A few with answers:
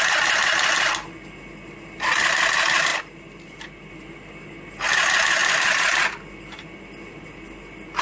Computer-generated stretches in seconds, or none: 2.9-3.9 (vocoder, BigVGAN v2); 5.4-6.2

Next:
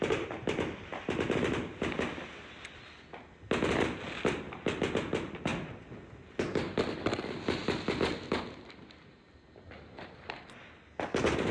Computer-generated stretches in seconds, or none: none

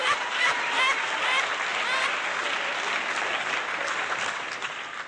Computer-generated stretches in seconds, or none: 0.0-1.7 (vocoder, BigVGAN v2); 3.9-5.1

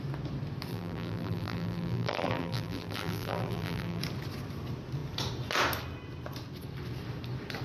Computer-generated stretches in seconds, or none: 0.7-4.0 (vocoder, BigVGAN v2)

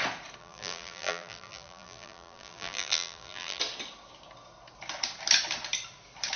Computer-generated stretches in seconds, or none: 0.4-3.6 (vocoder, BigVGAN v2)